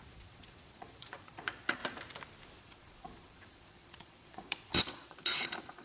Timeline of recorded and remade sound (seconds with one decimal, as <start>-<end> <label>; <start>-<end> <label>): 0.0-1.8 remade; 1.8-2.6 recorded; 2.6-5.8 remade